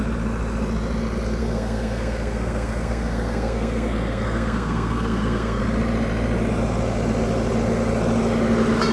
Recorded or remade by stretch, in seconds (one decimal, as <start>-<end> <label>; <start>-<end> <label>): 0.0-1.4 recorded; 1.4-5.6 remade; 5.6-8.9 recorded